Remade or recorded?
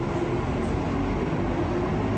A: recorded